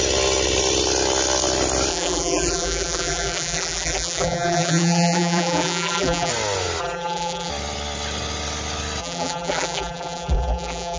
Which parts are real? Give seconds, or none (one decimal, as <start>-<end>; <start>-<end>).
0.0-1.9; 6.3-6.8; 7.5-9.0